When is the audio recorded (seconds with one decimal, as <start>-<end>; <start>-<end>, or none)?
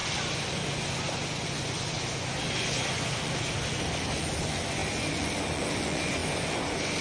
none